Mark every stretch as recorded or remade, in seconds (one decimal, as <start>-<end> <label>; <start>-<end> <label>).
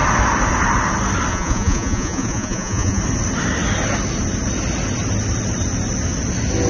0.0-1.3 recorded; 1.3-3.0 remade; 3.0-6.7 recorded